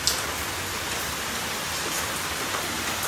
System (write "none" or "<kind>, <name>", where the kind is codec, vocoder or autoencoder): none